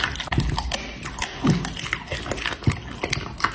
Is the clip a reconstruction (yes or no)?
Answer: no